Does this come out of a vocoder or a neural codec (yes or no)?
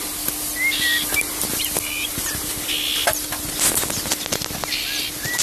no